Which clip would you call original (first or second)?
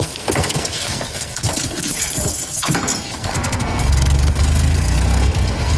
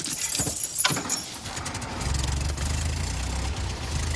second